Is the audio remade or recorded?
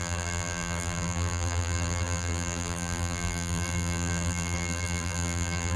remade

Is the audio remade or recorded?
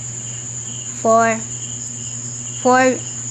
recorded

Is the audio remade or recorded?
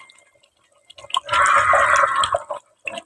recorded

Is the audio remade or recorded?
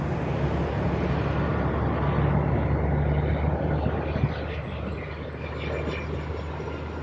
recorded